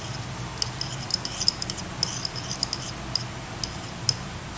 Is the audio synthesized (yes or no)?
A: no